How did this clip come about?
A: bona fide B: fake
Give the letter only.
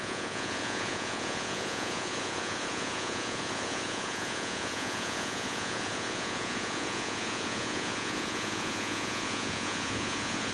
B